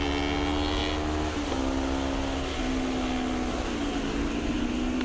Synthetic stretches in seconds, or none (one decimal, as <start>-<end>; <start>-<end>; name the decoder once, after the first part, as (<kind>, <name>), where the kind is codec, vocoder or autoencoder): none